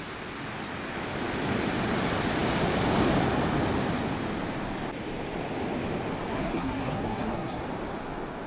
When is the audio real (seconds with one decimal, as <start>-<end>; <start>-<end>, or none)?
0.0-6.3; 7.6-8.5